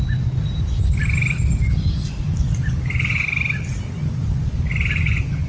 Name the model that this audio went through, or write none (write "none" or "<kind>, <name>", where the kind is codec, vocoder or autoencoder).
none